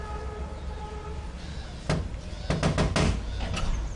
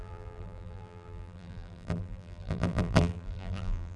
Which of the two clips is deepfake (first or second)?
second